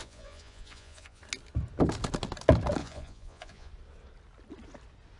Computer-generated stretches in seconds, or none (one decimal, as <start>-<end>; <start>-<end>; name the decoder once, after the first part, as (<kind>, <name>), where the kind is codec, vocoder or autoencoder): 0.0-1.2 (vocoder, Vocos); 2.8-3.7